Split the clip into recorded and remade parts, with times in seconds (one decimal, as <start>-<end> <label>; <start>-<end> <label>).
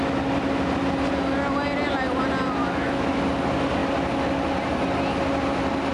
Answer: 0.0-2.6 recorded; 2.6-3.2 remade; 3.2-5.9 recorded